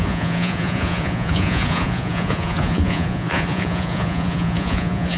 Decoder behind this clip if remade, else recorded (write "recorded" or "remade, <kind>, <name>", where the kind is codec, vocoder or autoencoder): remade, vocoder, Vocos